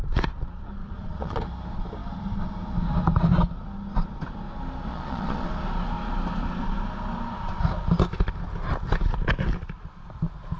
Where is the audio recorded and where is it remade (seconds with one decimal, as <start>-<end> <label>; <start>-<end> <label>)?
0.0-0.8 recorded; 0.8-1.4 remade; 1.4-4.9 recorded; 4.9-5.5 remade; 5.5-10.6 recorded

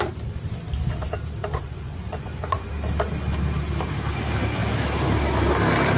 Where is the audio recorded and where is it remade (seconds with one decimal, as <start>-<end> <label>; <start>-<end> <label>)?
0.0-1.4 recorded; 1.4-2.7 remade; 2.7-6.0 recorded